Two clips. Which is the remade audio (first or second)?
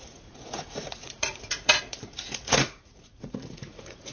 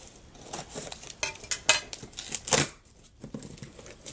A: first